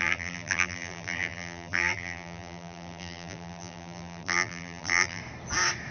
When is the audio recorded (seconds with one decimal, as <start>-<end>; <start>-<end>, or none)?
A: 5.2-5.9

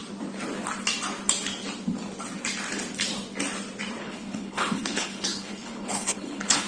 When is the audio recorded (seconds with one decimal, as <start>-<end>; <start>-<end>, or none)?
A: 0.0-4.0

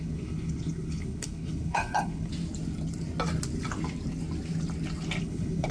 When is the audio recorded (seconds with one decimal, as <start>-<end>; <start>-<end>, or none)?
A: 2.3-5.2

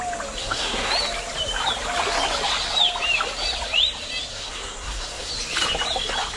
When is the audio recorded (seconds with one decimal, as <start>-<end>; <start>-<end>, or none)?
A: 0.0-0.4; 0.9-4.3; 5.3-6.4

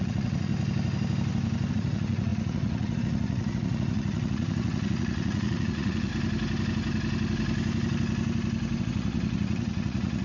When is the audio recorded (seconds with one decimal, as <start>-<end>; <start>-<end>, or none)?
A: 0.5-1.7; 6.1-8.8